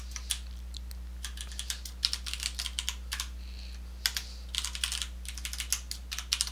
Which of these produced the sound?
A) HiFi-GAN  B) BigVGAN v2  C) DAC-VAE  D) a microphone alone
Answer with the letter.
D